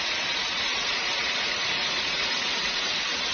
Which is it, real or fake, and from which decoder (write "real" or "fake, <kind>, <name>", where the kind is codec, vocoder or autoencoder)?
fake, vocoder, Vocos